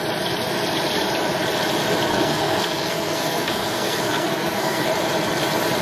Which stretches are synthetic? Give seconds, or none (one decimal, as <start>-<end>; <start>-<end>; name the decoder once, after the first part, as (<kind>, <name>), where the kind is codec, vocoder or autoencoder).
2.1-4.9 (codec, SNAC)